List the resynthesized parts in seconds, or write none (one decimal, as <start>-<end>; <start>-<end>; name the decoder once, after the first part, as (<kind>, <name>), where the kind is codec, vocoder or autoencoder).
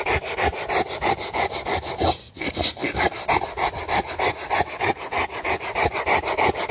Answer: none